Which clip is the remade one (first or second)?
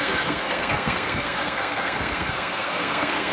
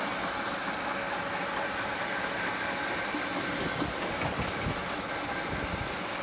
first